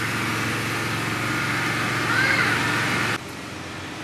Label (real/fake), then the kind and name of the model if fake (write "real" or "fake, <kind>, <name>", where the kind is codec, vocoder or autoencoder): real